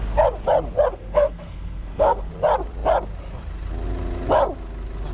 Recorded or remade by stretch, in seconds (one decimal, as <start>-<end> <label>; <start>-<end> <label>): 0.0-0.9 recorded; 0.9-2.3 remade; 2.3-5.1 recorded